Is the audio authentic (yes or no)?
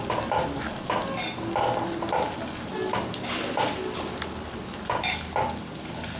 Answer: yes